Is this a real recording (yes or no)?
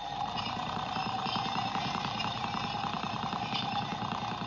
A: no